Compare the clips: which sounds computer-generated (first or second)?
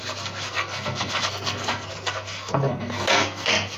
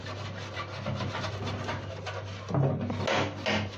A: first